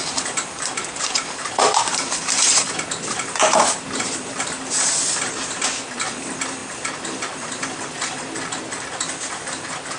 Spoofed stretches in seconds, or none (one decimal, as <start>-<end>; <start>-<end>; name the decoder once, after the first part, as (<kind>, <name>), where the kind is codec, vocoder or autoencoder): 0.0-5.0 (vocoder, BigVGAN v2); 5.8-10.0